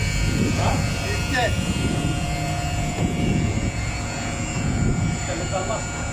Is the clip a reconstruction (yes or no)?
yes